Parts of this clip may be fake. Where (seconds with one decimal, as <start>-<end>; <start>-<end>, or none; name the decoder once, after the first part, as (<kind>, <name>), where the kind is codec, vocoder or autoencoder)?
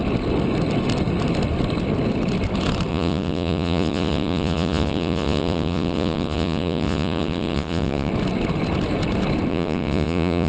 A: 2.9-8.1 (vocoder, Vocos); 9.5-10.5